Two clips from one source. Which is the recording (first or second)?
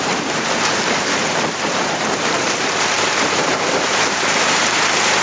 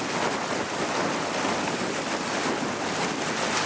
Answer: second